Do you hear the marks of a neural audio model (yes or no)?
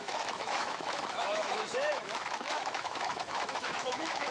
yes